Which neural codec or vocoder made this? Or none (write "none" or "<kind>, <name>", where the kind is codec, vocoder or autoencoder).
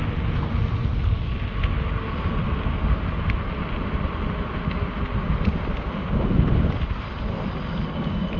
none